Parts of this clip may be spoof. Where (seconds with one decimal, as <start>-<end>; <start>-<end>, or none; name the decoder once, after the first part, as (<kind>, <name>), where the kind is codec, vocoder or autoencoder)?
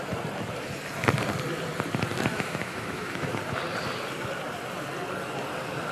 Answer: 2.3-3.4 (autoencoder, DAC-VAE)